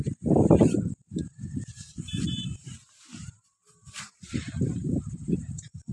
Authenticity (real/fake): fake